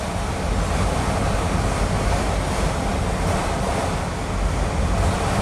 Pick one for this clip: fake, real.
real